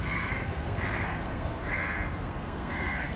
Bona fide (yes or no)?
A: no